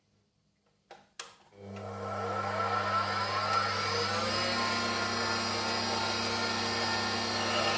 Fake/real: real